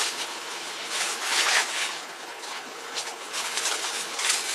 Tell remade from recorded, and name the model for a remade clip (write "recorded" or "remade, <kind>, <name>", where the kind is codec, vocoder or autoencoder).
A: remade, codec, HILCodec